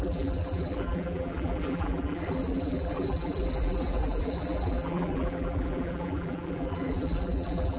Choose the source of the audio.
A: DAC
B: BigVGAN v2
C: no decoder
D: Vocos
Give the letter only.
B